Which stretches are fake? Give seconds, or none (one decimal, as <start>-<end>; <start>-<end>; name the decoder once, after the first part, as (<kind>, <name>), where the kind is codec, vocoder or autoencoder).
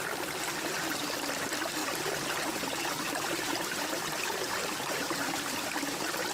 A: 1.8-5.6 (vocoder, BigVGAN v2)